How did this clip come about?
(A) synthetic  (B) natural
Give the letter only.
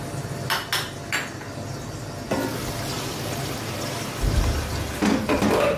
B